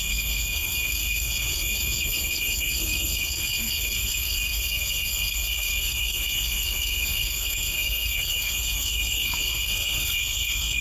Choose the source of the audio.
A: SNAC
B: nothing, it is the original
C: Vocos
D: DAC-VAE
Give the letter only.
A